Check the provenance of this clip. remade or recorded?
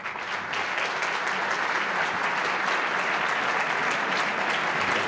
recorded